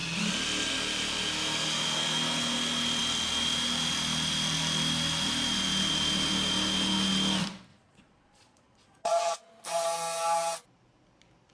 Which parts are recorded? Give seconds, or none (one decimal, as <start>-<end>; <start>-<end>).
0.0-7.7; 9.5-11.5